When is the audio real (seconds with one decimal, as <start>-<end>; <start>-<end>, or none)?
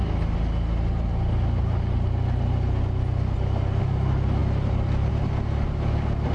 0.0-6.3